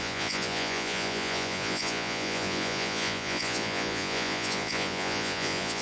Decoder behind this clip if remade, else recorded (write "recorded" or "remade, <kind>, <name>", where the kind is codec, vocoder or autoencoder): remade, vocoder, Vocos